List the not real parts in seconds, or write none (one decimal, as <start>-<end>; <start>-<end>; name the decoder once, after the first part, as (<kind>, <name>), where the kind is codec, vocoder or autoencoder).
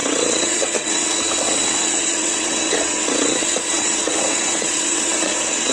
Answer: 0.0-5.7 (vocoder, WaveNeXt)